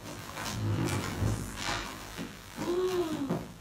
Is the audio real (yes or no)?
no